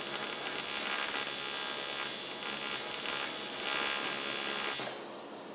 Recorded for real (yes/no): yes